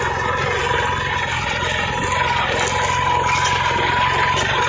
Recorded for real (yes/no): yes